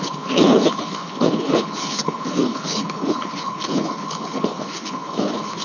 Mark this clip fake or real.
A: fake